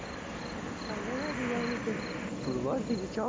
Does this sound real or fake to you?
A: real